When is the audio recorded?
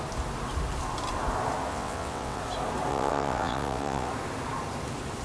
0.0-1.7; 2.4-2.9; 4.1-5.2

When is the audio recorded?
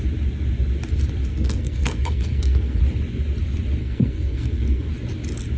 0.0-1.3; 2.8-3.8; 4.9-5.6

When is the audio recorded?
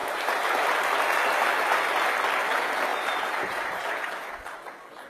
0.5-2.9; 3.8-5.1